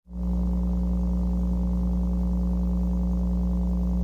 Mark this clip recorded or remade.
recorded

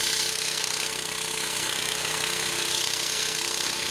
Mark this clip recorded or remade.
remade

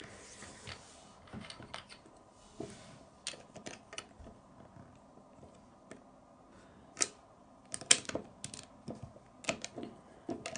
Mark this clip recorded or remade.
recorded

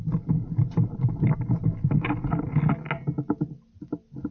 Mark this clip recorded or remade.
recorded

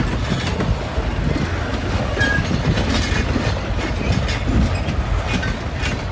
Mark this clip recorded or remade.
recorded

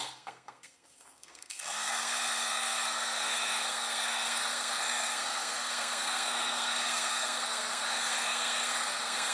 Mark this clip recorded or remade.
remade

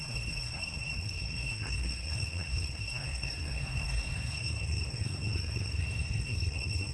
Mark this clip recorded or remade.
remade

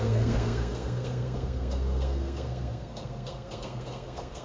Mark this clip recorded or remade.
remade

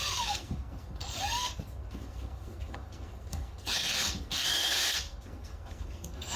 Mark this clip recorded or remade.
remade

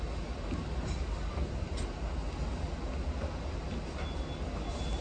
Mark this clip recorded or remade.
recorded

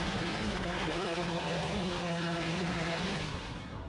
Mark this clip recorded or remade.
remade